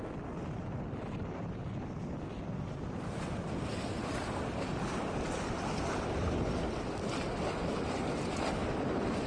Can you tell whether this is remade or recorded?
recorded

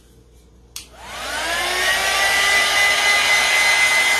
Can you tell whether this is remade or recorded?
recorded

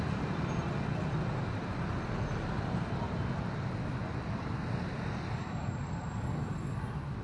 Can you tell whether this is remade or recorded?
recorded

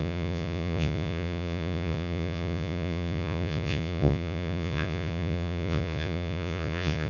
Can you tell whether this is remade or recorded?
remade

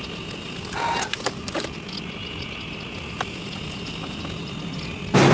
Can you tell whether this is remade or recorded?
recorded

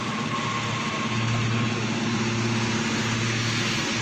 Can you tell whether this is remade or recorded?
recorded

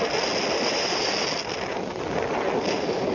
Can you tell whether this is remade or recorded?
recorded